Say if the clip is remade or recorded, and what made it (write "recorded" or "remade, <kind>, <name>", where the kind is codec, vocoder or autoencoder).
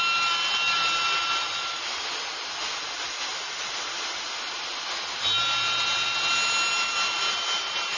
recorded